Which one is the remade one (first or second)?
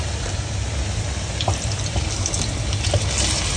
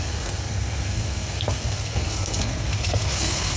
second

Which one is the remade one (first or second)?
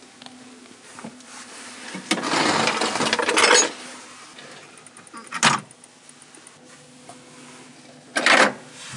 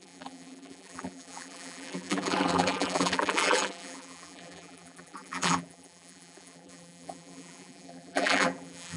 second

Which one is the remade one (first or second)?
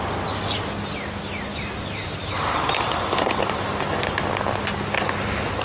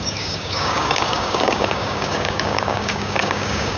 second